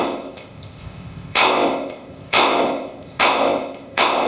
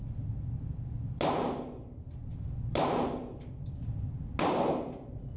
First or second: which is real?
second